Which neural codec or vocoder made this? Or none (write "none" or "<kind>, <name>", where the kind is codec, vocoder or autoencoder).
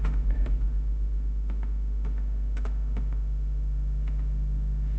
autoencoder, DAC-VAE